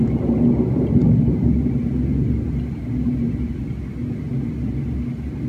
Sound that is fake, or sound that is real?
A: real